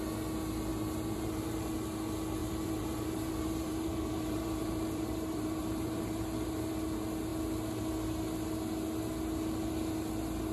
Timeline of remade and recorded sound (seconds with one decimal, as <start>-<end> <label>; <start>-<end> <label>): 0.0-0.7 recorded; 0.7-1.7 remade; 1.7-2.4 recorded; 2.4-6.7 remade; 6.7-10.5 recorded